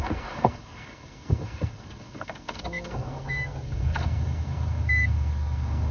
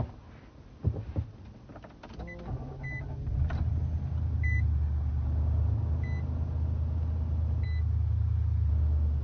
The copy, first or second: first